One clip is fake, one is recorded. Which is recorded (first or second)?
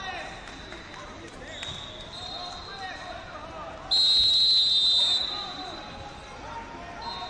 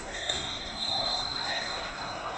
first